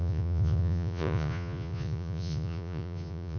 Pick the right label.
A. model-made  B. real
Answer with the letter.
A